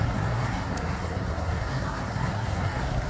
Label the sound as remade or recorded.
remade